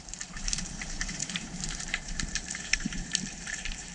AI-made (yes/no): yes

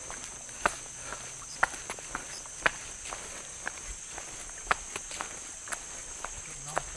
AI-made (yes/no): no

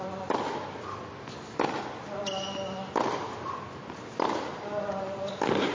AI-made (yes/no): no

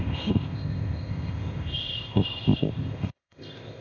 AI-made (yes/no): yes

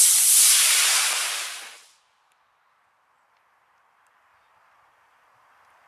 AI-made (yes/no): no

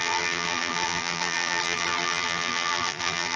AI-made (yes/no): yes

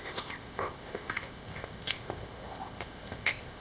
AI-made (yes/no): yes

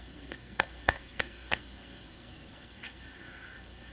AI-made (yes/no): yes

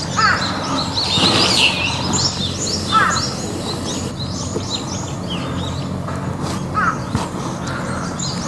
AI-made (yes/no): no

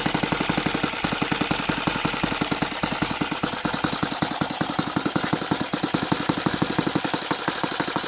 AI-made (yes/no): no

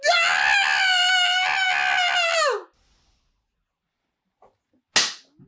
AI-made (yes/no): no